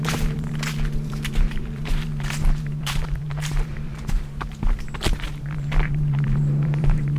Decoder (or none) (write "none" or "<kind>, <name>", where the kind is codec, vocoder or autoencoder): vocoder, BigVGAN v2